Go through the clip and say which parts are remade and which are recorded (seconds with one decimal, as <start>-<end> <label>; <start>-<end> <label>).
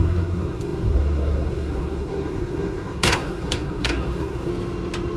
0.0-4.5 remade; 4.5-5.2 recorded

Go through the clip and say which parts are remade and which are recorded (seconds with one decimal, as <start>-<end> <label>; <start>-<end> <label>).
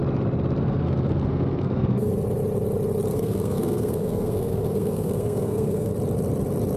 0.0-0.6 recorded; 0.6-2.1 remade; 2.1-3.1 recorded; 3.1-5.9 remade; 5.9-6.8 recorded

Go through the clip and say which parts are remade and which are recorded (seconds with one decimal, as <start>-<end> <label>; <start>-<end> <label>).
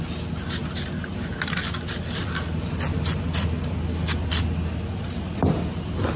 0.0-6.2 recorded